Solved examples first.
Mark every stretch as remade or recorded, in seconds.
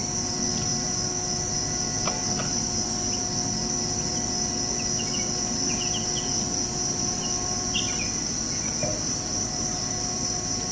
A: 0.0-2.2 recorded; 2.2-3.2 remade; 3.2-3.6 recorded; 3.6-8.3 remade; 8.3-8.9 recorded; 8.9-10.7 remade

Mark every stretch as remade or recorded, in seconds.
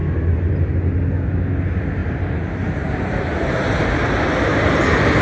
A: 0.0-0.7 remade; 0.7-2.0 recorded; 2.0-4.8 remade; 4.8-5.2 recorded